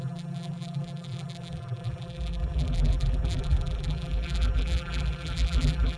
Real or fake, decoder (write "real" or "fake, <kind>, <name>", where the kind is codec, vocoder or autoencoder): fake, vocoder, BigVGAN v2